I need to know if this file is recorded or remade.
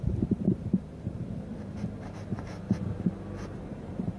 remade